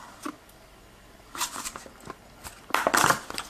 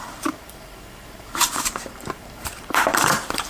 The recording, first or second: first